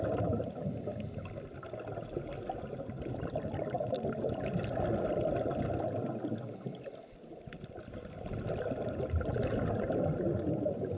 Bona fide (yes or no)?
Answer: yes